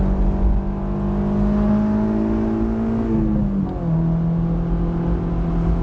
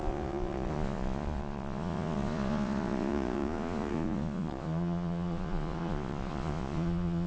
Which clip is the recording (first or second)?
first